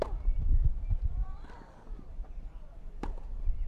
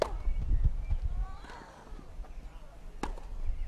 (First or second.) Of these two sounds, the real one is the second